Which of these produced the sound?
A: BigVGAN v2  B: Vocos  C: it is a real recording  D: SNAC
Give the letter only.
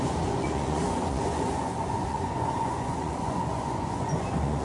B